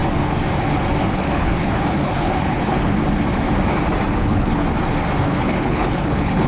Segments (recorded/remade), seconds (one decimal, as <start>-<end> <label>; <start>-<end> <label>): 0.0-1.1 recorded; 1.1-3.0 remade; 3.0-4.1 recorded; 4.1-4.6 remade; 4.6-5.2 recorded; 5.2-6.5 remade

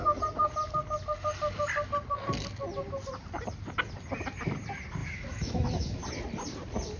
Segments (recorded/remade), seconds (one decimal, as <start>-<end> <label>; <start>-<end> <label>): 0.0-5.0 recorded; 5.0-6.0 remade; 6.0-7.0 recorded

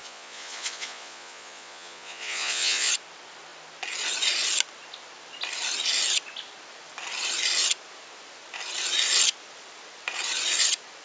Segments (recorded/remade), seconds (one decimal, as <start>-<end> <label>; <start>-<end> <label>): 0.0-2.9 remade; 2.9-11.0 recorded

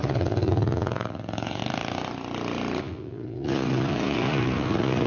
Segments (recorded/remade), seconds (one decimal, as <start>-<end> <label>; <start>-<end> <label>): 0.0-1.6 remade; 1.6-2.8 recorded; 2.8-5.1 remade

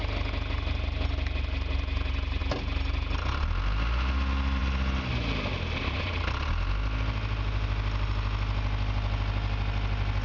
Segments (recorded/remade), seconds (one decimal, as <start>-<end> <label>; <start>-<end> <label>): 0.0-10.2 recorded